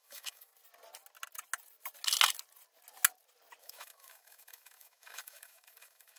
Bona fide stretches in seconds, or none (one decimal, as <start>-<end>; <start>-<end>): 0.5-3.6